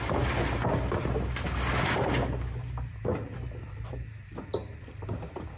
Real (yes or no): yes